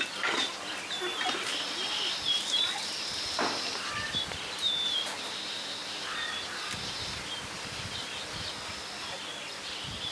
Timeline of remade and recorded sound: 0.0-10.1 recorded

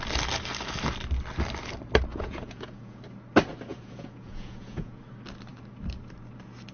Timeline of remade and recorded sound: 0.0-2.1 recorded; 2.1-3.0 remade; 3.0-3.7 recorded; 3.7-5.0 remade; 5.0-6.7 recorded

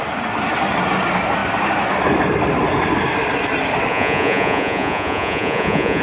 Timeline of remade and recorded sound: 0.0-3.9 recorded; 3.9-6.0 remade

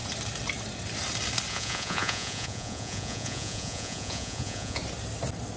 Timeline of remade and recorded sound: 0.0-1.5 recorded; 1.5-4.8 remade; 4.8-5.6 recorded

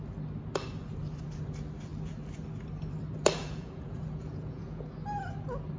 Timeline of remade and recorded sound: 0.0-3.4 recorded; 3.4-4.8 remade; 4.8-5.8 recorded

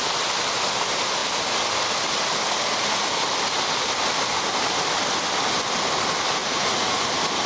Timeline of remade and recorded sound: 0.0-6.4 recorded; 6.4-7.0 remade; 7.0-7.5 recorded